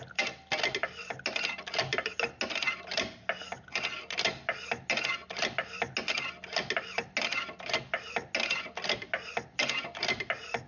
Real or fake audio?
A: real